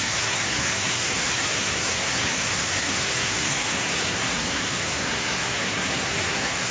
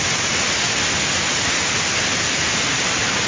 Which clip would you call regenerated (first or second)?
first